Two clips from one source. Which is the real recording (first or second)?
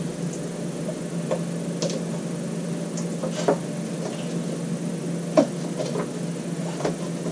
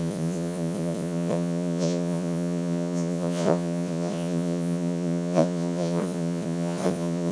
first